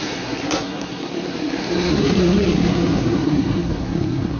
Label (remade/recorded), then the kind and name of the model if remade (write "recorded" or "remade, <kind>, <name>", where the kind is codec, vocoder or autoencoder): remade, codec, SNAC